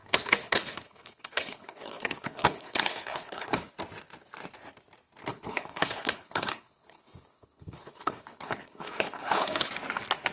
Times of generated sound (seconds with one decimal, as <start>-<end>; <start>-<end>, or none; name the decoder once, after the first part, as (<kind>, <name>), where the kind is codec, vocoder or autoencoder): 0.0-3.7 (codec, HILCodec); 5.3-9.7